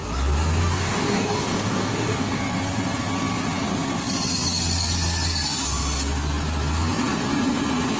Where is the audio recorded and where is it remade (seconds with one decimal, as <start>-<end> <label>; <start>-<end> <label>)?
0.0-0.6 recorded; 0.6-2.4 remade; 2.4-8.0 recorded